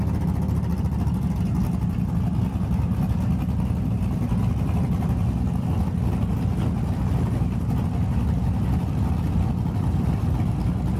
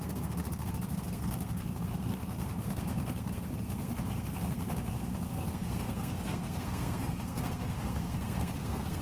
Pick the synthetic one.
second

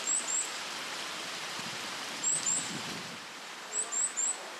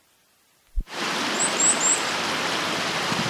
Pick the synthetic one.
first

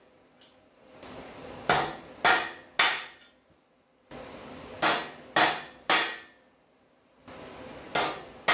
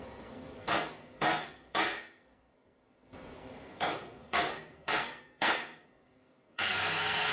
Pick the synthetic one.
second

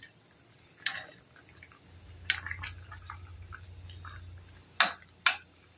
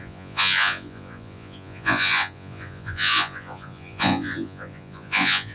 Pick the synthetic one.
second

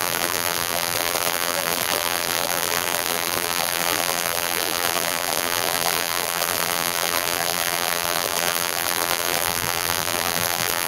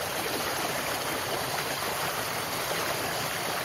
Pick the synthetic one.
first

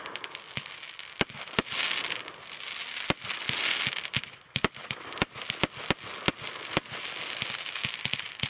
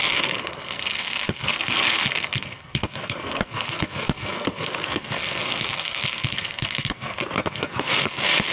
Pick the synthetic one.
second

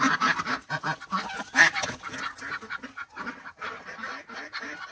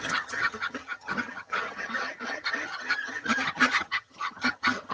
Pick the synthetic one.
second